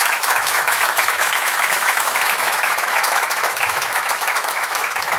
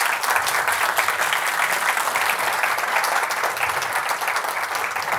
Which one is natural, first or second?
second